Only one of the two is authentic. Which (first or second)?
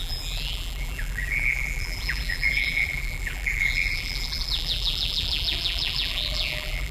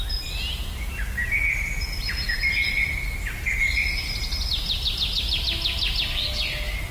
second